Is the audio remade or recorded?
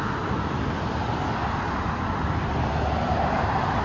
recorded